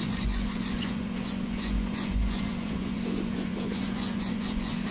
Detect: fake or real fake